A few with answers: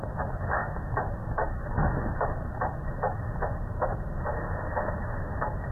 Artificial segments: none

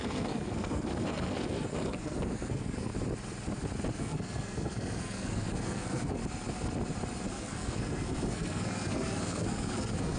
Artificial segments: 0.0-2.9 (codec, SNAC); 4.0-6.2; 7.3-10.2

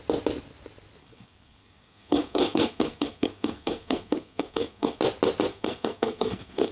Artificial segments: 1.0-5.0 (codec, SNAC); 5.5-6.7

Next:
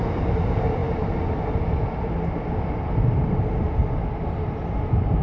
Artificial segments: none

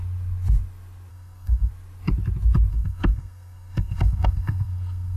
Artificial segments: 1.1-1.7 (codec, SNAC); 2.7-5.2

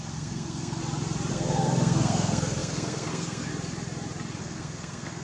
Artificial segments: 0.0-0.8 (codec, SNAC); 1.3-3.5; 4.4-5.2

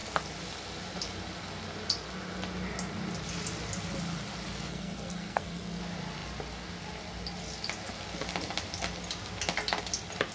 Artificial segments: 4.7-5.8 (codec, SNAC)

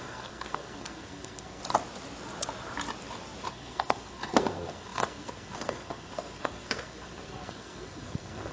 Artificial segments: 0.0-1.6 (codec, SNAC); 3.5-8.5